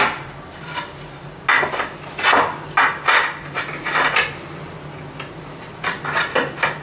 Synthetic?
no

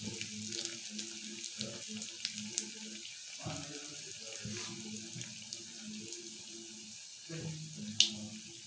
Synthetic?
no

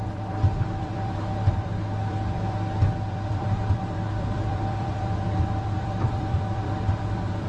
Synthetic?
yes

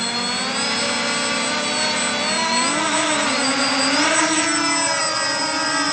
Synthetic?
no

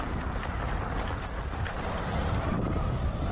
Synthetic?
no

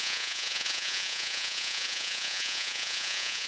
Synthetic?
yes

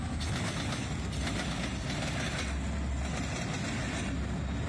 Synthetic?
no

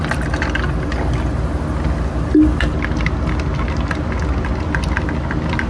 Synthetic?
no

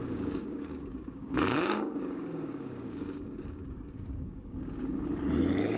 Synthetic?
yes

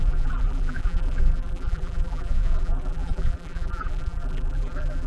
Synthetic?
yes